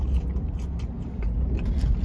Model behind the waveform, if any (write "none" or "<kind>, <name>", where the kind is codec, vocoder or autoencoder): none